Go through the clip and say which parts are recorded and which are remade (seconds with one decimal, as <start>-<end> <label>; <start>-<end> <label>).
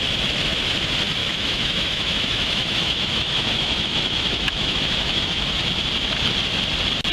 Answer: 0.0-1.2 recorded; 1.2-5.5 remade; 5.5-7.1 recorded